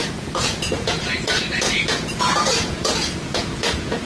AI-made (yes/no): yes